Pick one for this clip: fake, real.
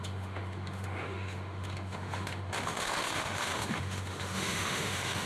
fake